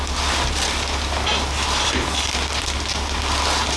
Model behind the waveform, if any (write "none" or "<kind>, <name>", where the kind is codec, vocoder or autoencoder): none